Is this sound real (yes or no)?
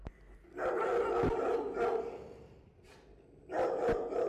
yes